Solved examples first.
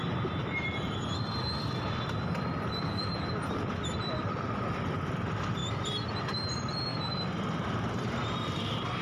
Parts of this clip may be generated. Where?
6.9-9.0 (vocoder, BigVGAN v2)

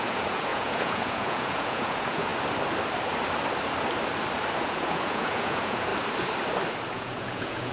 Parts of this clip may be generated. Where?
0.0-2.3 (vocoder, Vocos); 4.6-5.9; 6.9-7.7

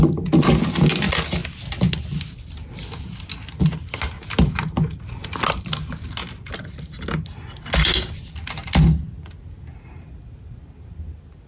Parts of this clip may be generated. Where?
none

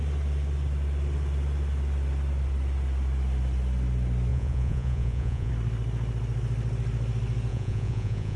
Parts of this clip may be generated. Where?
4.3-5.5 (vocoder, Vocos); 7.5-8.4

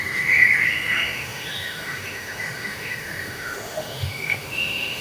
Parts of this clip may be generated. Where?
0.0-5.0 (autoencoder, DAC-VAE)

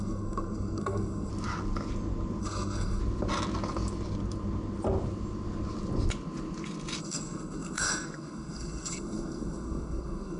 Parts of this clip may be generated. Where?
0.0-1.3 (codec, SNAC); 2.4-3.0; 7.0-10.4